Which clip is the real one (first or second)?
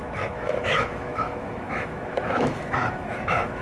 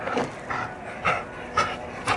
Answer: second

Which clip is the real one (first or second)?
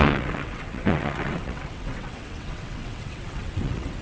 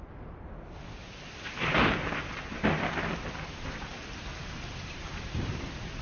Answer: second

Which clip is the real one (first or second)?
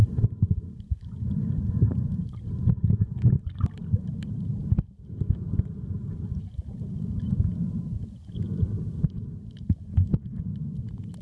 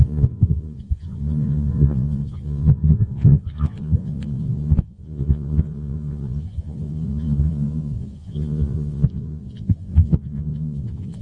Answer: first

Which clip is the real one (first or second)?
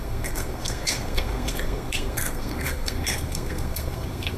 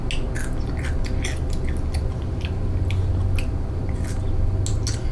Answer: second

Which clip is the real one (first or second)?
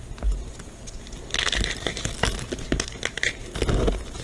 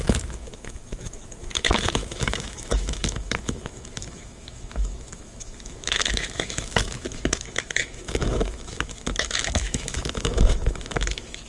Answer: first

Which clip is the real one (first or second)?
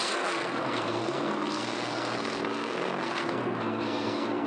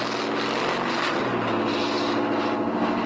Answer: second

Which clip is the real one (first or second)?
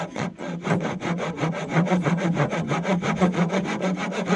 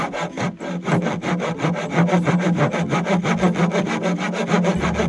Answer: second